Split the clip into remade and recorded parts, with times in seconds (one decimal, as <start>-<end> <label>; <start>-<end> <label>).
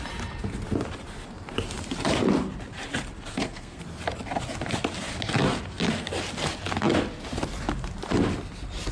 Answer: 0.0-3.3 recorded; 3.3-3.8 remade; 3.8-8.9 recorded